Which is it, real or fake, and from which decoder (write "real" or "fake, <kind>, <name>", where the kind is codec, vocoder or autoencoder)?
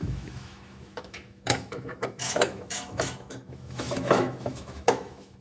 fake, autoencoder, DAC-VAE